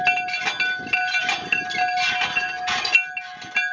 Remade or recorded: recorded